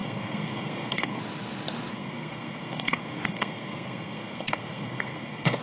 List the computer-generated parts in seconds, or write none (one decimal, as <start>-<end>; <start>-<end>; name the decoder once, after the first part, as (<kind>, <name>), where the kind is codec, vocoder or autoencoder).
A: 0.0-1.2 (codec, SNAC); 1.9-5.6